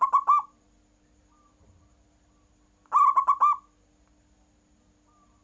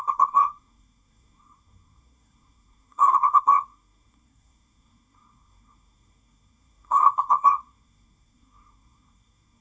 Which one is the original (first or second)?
first